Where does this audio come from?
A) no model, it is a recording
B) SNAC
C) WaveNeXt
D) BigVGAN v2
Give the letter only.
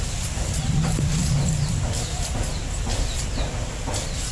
D